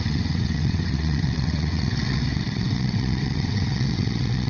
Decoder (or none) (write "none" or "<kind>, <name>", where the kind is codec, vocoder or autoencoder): vocoder, WaveNeXt